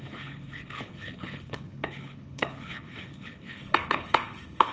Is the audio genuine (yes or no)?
no